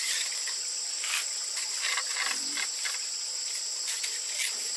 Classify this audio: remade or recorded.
remade